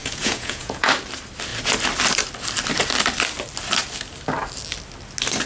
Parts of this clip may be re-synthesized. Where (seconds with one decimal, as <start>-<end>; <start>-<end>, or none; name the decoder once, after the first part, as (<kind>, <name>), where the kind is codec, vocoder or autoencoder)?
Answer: 0.0-0.9 (vocoder, Vocos)